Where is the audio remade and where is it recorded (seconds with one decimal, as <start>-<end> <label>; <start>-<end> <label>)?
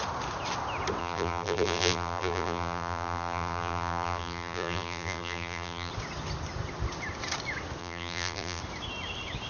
0.0-1.0 recorded; 1.0-5.9 remade; 5.9-7.8 recorded; 7.8-8.6 remade; 8.6-9.5 recorded